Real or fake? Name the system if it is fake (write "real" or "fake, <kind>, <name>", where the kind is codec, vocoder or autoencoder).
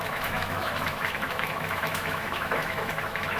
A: fake, autoencoder, DAC-VAE